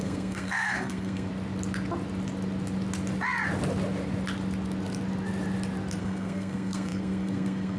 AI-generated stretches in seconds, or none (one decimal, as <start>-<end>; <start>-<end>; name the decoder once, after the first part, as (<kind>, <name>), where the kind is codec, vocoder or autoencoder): 0.0-1.3 (codec, SNAC); 6.0-7.8